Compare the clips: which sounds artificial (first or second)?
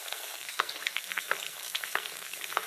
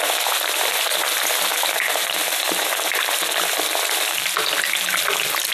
first